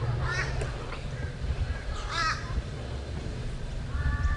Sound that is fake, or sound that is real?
fake